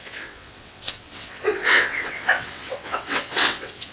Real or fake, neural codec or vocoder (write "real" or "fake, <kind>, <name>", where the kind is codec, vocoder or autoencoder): fake, vocoder, WaveNeXt